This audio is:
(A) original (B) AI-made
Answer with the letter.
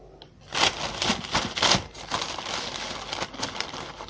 A